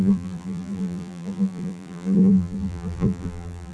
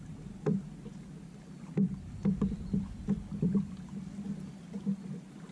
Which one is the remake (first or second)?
first